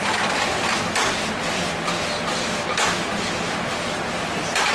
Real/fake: real